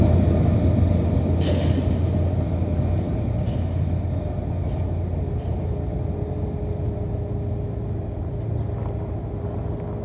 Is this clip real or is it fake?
real